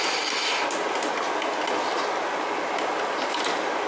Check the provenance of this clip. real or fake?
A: real